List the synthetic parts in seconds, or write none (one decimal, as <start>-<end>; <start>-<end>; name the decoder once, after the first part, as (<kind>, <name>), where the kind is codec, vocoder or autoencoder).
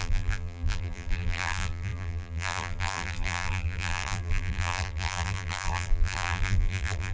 0.0-7.1 (vocoder, BigVGAN v2)